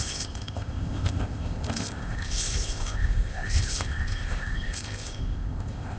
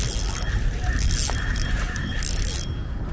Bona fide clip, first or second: second